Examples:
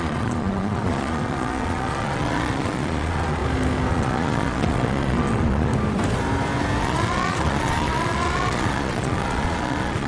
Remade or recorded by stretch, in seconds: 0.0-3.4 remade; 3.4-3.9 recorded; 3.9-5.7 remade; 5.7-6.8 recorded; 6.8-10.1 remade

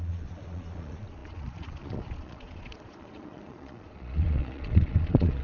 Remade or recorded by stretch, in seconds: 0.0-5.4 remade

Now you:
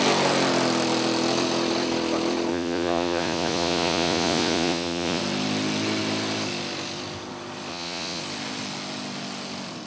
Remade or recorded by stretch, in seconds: 0.0-2.5 recorded; 2.5-5.2 remade; 5.2-7.7 recorded; 7.7-8.2 remade; 8.2-9.9 recorded

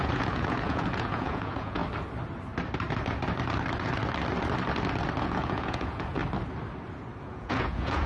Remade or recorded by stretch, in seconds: 0.0-1.8 remade; 1.8-5.2 recorded; 5.2-6.2 remade; 6.2-7.2 recorded; 7.2-8.1 remade

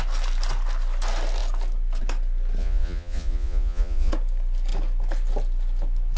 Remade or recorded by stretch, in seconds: 0.0-2.6 recorded; 2.6-4.1 remade; 4.1-6.2 recorded

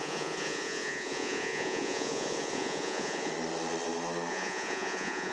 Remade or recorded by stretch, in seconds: 0.0-3.3 remade; 3.3-4.3 recorded; 4.3-5.3 remade

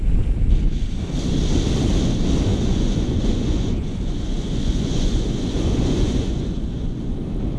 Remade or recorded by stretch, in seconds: 0.0-2.5 recorded; 2.5-7.1 remade; 7.1-7.6 recorded